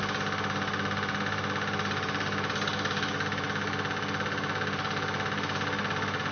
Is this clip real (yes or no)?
yes